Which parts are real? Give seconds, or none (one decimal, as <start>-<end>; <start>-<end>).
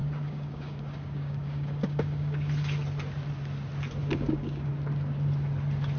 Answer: 2.5-4.0; 4.7-6.0